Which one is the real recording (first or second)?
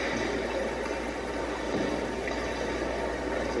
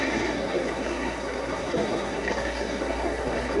first